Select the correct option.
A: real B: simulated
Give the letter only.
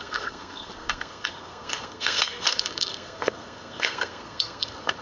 B